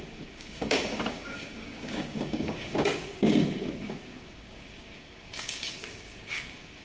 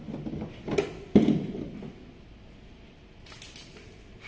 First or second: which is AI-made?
first